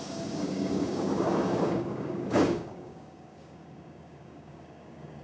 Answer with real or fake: fake